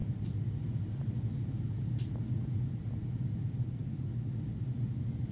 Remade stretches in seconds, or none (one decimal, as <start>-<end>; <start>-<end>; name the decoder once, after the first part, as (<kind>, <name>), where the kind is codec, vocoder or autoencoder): none